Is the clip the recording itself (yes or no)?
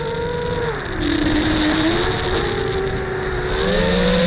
yes